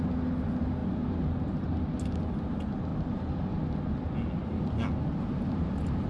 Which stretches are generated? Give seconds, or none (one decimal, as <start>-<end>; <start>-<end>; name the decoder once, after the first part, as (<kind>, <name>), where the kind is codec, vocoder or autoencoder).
none